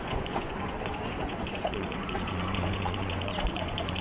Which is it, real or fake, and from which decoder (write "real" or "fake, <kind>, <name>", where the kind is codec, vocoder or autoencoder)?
fake, vocoder, Vocos